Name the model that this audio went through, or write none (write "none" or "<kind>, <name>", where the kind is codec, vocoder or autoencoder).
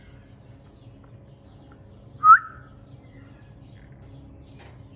none